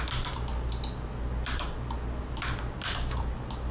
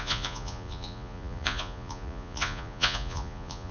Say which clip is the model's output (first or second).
second